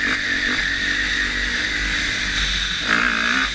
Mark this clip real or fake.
real